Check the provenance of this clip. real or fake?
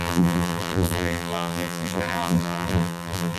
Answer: fake